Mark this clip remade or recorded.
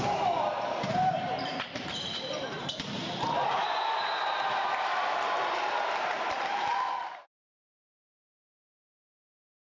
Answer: remade